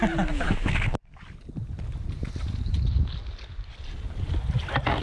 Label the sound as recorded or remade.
recorded